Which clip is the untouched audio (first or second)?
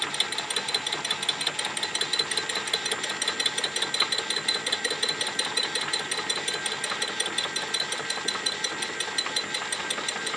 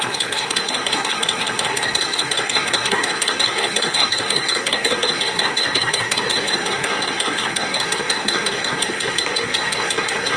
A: first